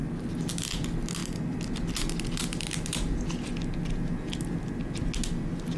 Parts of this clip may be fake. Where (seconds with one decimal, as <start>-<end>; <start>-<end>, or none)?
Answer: none